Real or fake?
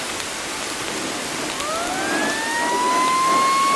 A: real